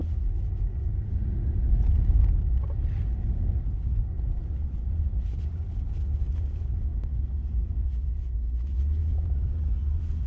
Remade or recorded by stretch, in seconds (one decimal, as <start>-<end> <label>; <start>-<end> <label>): 0.0-9.0 recorded; 9.0-9.5 remade; 9.5-10.3 recorded